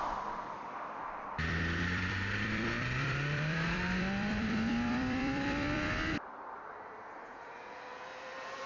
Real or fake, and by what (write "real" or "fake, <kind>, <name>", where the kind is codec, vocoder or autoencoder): fake, vocoder, BigVGAN v2